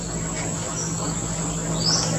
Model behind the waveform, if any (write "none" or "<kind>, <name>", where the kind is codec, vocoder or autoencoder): none